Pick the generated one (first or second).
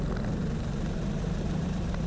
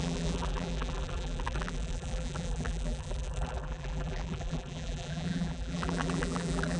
second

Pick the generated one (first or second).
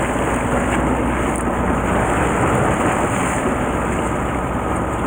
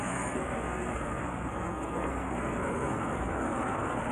second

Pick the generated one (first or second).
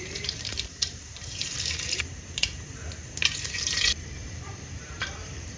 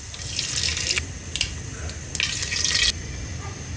first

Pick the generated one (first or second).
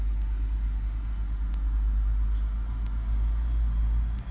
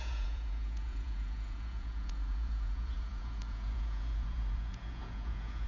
second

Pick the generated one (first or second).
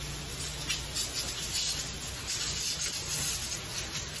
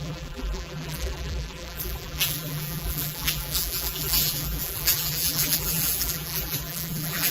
second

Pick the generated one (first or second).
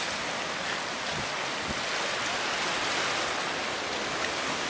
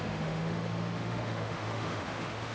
second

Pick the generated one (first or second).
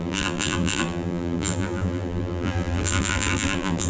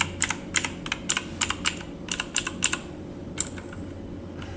first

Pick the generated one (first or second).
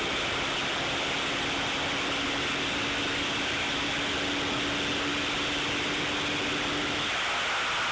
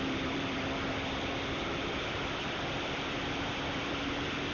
second